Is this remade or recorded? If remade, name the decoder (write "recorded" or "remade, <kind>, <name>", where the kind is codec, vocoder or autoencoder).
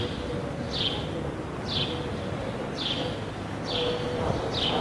recorded